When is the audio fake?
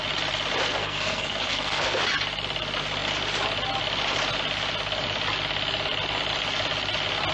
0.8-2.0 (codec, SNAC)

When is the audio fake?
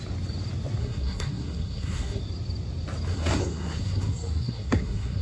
0.8-2.2 (codec, SNAC); 3.1-5.2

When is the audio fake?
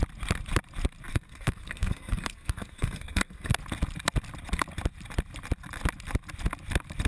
1.1-3.6 (codec, SNAC)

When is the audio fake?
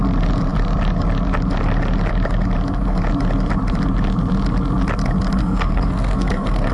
5.4-6.7 (codec, SNAC)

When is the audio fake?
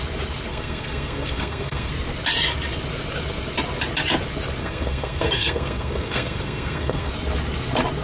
0.5-1.9 (codec, SNAC); 4.6-7.1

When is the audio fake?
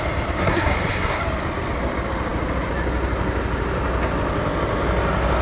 0.4-1.2 (codec, SNAC)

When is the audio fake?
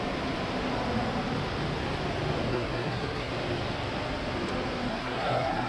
2.5-3.3 (codec, SNAC); 4.9-5.7